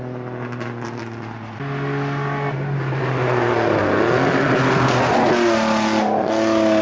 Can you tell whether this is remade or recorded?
recorded